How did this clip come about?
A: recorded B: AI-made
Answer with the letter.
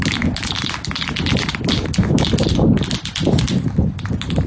A